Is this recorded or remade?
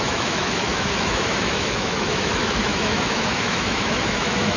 remade